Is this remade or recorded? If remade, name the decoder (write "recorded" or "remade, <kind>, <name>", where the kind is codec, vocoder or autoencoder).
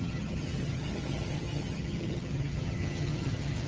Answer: remade, vocoder, HiFi-GAN